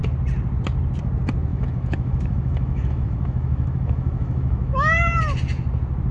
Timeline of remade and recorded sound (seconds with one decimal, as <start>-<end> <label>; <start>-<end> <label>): 0.0-1.5 recorded; 1.5-5.2 remade; 5.2-6.1 recorded